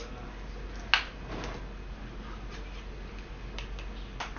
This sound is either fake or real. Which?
real